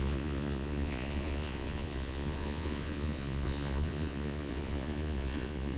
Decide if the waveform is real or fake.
fake